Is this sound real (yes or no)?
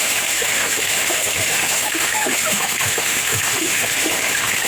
no